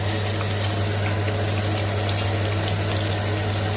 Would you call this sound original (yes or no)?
yes